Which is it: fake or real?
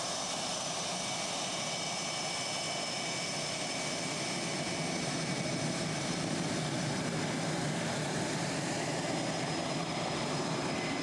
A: real